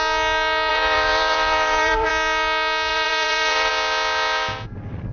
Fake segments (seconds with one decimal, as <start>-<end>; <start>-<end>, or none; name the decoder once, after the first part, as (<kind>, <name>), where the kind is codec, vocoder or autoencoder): 0.7-2.1 (vocoder, BigVGAN v2); 2.9-3.7